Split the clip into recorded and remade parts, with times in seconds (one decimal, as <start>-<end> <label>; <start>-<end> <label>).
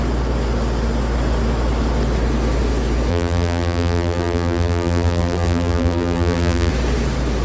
0.0-3.1 recorded; 3.1-6.7 remade; 6.7-7.4 recorded